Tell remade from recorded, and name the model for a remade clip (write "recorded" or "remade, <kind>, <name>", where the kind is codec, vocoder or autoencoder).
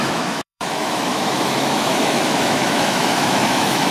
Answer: remade, autoencoder, DAC-VAE